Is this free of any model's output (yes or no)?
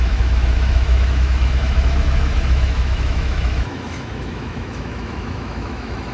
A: no